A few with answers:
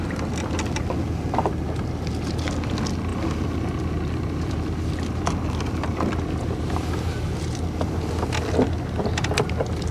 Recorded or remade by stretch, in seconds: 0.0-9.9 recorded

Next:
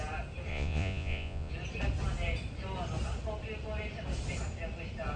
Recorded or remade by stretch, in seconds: 0.0-0.5 recorded; 0.5-1.5 remade; 1.5-5.2 recorded

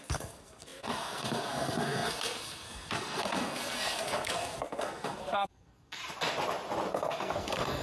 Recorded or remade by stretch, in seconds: 0.0-6.0 remade; 6.0-6.9 recorded; 6.9-7.8 remade

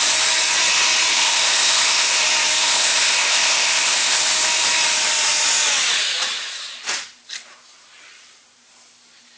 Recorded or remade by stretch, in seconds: 0.0-1.1 recorded; 1.1-2.2 remade; 2.2-2.6 recorded; 2.6-4.2 remade; 4.2-9.4 recorded